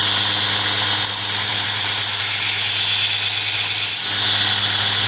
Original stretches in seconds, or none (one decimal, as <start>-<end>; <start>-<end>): 0.0-1.5; 2.2-5.1